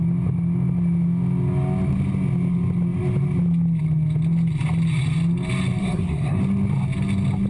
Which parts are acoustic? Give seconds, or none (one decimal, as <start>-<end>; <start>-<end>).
0.0-5.8; 6.4-7.5